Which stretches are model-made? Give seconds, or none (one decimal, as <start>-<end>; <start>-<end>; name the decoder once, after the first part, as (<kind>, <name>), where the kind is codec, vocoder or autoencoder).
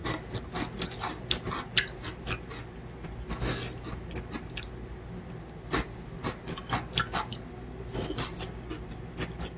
none